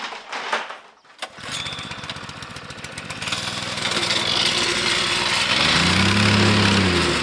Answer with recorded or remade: recorded